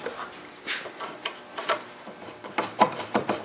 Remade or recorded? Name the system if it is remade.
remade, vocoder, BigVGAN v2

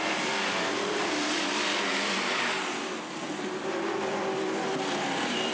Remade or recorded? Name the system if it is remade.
remade, vocoder, BigVGAN v2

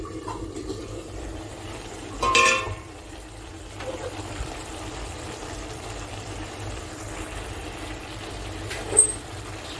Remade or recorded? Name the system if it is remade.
remade, vocoder, BigVGAN v2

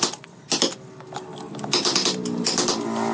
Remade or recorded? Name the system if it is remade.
recorded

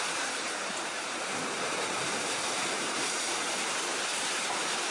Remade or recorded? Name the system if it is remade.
remade, vocoder, BigVGAN v2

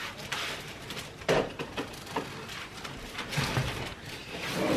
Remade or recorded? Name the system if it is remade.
remade, vocoder, BigVGAN v2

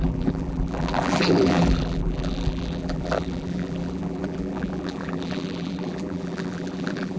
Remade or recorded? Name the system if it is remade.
remade, vocoder, BigVGAN v2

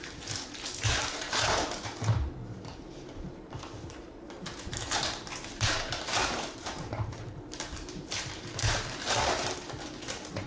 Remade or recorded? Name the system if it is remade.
remade, vocoder, BigVGAN v2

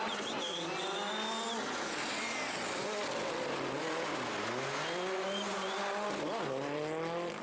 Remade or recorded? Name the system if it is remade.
recorded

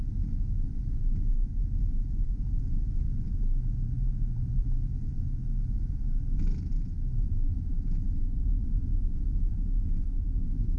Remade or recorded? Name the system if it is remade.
remade, vocoder, BigVGAN v2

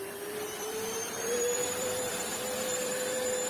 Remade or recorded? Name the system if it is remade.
remade, vocoder, BigVGAN v2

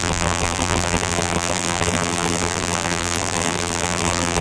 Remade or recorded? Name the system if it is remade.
remade, vocoder, BigVGAN v2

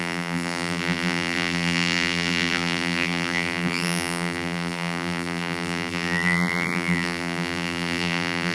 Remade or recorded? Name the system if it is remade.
remade, vocoder, BigVGAN v2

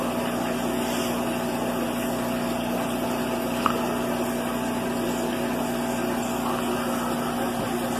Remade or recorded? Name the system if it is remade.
recorded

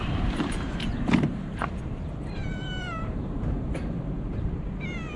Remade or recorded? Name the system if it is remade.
remade, vocoder, BigVGAN v2